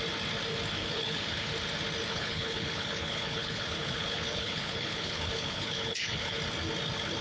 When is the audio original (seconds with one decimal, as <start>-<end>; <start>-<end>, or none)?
0.0-0.8; 1.5-2.1; 6.4-7.2